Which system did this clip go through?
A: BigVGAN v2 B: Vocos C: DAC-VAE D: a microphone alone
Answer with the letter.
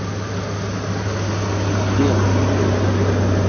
D